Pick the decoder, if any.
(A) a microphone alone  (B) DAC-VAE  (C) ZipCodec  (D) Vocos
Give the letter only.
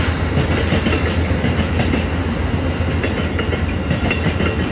A